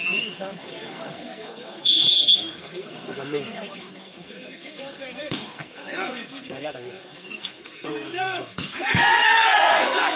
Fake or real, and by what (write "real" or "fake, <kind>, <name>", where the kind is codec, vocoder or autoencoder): fake, codec, SNAC